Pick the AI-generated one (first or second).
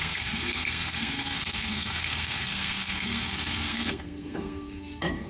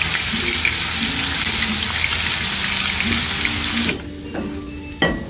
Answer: first